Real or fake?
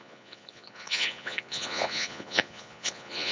fake